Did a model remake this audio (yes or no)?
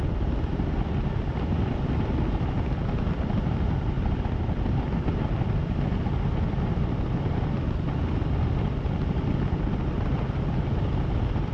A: no